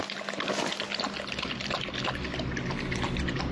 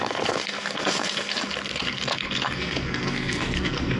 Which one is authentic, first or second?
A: first